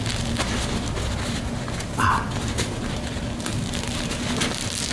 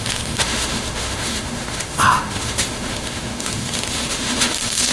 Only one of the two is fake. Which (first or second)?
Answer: second